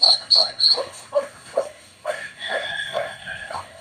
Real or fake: fake